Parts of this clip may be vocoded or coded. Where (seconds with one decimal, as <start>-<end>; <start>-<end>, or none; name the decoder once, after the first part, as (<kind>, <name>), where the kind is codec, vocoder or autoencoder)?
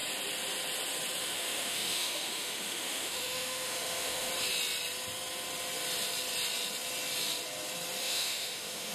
1.2-4.3 (autoencoder, DAC-VAE); 8.0-8.9